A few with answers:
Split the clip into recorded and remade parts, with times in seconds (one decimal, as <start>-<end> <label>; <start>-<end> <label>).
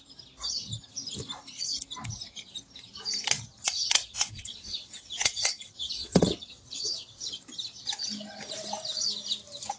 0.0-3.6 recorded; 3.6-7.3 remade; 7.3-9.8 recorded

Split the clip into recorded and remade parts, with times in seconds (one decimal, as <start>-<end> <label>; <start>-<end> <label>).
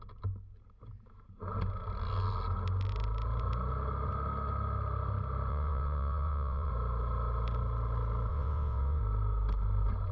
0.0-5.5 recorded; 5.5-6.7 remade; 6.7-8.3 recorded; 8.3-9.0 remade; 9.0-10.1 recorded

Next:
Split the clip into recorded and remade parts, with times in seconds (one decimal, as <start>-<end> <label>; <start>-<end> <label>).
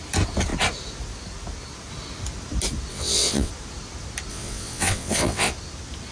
0.0-2.9 recorded; 2.9-3.5 remade; 3.5-4.3 recorded; 4.3-5.5 remade; 5.5-6.1 recorded